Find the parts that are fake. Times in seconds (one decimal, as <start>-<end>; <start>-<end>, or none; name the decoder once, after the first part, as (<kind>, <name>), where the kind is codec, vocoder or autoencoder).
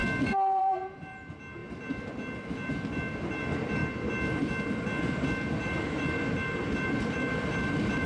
0.6-3.8 (vocoder, BigVGAN v2); 5.5-8.1